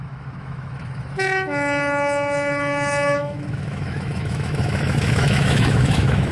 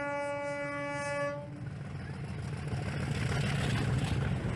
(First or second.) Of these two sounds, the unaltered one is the second